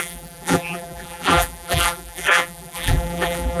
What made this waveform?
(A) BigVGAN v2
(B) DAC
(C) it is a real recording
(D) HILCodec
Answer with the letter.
A